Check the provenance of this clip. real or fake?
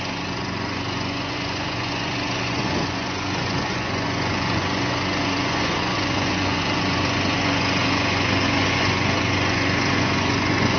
fake